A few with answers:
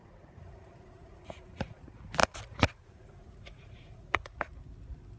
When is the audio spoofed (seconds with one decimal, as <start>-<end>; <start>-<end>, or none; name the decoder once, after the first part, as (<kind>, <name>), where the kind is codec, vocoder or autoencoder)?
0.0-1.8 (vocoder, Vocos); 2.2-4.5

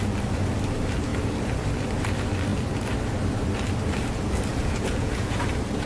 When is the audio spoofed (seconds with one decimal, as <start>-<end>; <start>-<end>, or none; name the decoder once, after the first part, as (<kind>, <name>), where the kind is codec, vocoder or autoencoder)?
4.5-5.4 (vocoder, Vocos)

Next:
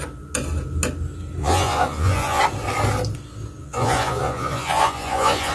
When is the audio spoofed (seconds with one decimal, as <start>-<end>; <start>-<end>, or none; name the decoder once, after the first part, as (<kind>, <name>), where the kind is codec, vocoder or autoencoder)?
1.4-2.4 (vocoder, Vocos); 3.6-5.5

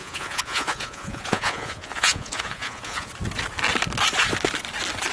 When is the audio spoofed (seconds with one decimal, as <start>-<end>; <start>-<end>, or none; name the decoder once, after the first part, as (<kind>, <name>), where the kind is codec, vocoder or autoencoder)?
0.0-3.1 (vocoder, Vocos)